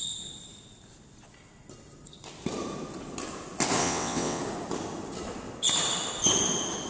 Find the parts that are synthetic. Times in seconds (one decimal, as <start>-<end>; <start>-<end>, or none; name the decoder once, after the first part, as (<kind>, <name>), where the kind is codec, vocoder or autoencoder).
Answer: 3.8-4.4 (vocoder, WaveNeXt)